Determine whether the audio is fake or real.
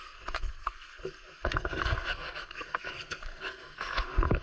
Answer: fake